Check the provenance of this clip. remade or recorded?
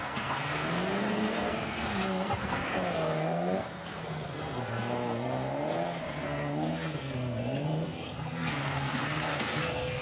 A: remade